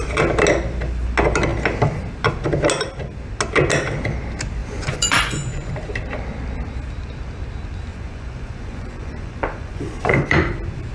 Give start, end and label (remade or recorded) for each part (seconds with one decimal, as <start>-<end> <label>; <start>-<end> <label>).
0.0-4.6 recorded; 4.6-5.7 remade; 5.7-7.9 recorded; 7.9-10.5 remade; 10.5-10.9 recorded